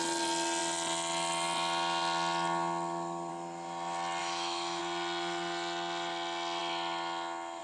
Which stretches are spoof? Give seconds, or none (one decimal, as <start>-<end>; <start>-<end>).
4.2-4.8